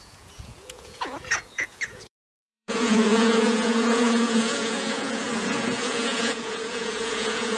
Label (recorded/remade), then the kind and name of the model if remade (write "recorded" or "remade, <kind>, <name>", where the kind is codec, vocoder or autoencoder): remade, vocoder, Vocos